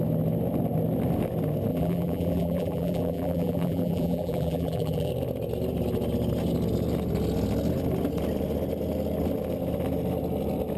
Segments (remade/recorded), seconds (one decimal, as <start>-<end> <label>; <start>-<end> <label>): 0.0-1.7 recorded; 1.7-5.1 remade; 5.1-10.8 recorded